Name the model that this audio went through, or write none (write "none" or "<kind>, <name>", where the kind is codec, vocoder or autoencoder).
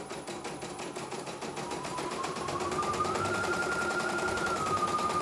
vocoder, BigVGAN v2